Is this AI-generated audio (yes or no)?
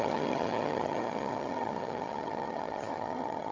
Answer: yes